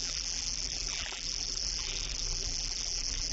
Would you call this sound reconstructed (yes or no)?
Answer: yes